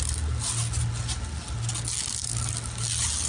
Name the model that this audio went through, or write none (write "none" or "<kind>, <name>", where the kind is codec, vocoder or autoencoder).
none